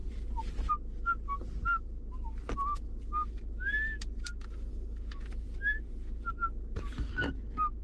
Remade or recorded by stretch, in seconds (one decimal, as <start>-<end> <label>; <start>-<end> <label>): 0.0-0.7 remade; 0.7-7.8 recorded